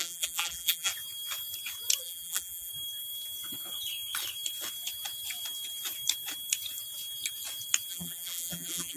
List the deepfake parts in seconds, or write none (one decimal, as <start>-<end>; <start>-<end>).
0.0-0.9; 2.0-2.7; 7.9-9.0